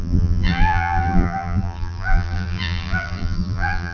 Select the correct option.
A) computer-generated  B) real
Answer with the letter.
A